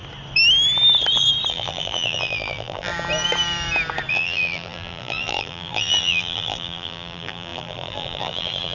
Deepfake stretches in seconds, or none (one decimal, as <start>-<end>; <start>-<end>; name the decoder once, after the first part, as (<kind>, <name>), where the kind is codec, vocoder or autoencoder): 1.5-2.9 (vocoder, BigVGAN v2); 4.1-8.7